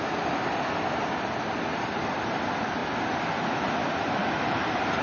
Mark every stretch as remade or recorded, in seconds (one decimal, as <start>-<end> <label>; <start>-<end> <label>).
0.0-1.7 recorded; 1.7-2.4 remade; 2.4-4.2 recorded; 4.2-5.0 remade